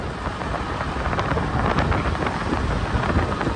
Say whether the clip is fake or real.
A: real